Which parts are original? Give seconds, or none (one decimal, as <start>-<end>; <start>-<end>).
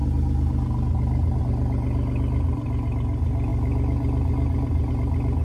0.0-5.4